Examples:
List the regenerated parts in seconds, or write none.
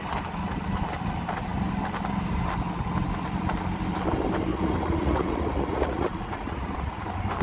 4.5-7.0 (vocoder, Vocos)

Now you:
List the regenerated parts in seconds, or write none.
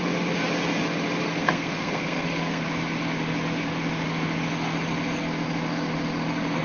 1.3-2.6 (codec, SNAC)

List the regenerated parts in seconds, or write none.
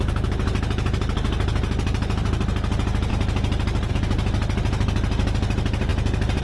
none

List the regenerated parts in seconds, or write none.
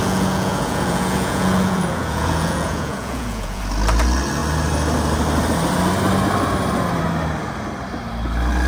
0.0-3.6 (vocoder, Vocos)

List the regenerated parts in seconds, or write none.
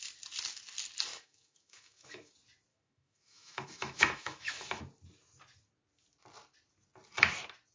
1.1-2.3 (autoencoder, DAC-VAE); 2.7-4.8